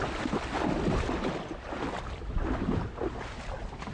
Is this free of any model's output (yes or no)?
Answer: yes